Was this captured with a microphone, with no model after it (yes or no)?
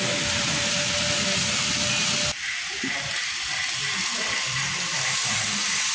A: yes